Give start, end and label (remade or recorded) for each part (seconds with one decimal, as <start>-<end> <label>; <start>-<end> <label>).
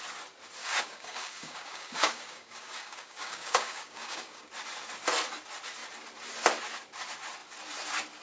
0.0-0.6 recorded; 0.6-4.5 remade; 4.5-8.2 recorded